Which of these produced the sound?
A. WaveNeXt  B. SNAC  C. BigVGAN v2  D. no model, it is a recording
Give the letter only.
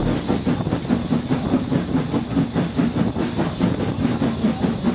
D